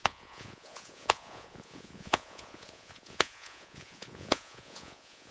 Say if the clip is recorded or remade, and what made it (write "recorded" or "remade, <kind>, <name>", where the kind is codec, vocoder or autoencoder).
remade, vocoder, Vocos